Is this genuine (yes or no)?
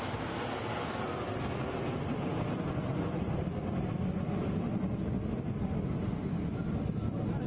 yes